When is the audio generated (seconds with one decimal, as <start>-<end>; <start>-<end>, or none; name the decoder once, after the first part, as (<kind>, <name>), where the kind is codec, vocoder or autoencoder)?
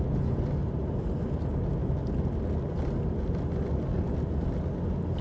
none